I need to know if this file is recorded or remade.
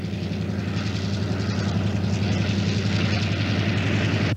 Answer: recorded